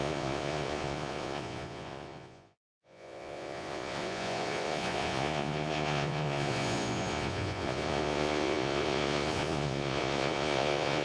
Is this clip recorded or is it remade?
remade